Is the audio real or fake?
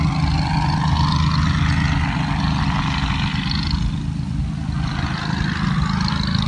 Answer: real